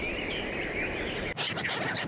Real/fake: real